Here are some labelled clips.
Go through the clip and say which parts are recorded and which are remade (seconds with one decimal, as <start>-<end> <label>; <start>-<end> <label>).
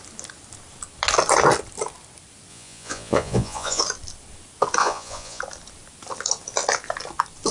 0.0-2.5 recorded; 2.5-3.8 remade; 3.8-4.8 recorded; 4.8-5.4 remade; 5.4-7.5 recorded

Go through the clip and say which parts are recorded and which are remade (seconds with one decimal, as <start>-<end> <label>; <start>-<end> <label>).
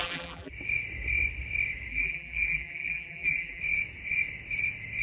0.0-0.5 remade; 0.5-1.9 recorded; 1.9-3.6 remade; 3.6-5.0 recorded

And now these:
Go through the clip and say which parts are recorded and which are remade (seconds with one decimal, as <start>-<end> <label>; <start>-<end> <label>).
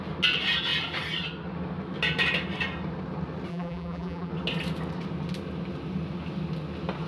0.0-3.5 recorded; 3.5-4.3 remade; 4.3-7.1 recorded